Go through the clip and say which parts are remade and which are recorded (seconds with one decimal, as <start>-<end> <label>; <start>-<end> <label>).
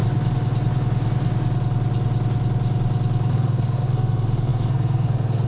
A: 0.0-3.3 recorded; 3.3-5.5 remade